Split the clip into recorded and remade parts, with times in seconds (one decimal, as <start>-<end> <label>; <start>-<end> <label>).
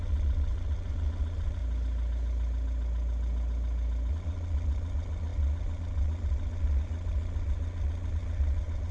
0.0-1.6 remade; 1.6-4.1 recorded; 4.1-8.9 remade